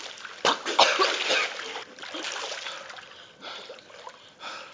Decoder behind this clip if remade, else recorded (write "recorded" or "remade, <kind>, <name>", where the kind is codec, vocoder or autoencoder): recorded